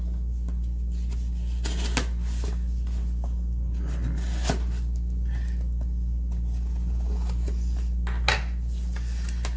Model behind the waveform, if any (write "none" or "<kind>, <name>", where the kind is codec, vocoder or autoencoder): none